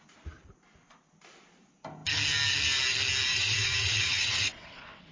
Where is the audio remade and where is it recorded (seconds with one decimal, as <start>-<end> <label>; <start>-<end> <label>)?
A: 0.0-3.3 recorded; 3.3-5.1 remade